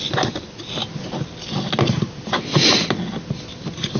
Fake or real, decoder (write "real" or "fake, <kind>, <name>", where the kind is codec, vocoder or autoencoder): real